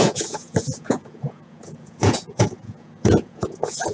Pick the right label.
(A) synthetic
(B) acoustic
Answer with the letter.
A